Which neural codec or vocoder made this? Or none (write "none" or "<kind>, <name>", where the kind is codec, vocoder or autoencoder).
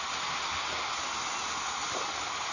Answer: none